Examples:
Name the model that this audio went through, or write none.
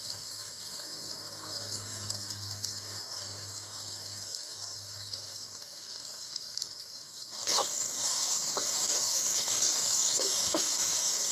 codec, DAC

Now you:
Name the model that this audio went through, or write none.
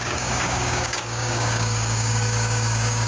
codec, DAC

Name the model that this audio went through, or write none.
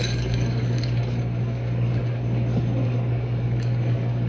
codec, DAC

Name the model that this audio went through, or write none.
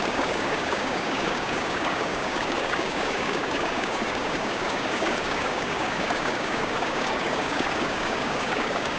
codec, DAC